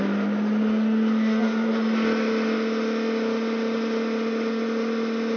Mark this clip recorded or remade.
recorded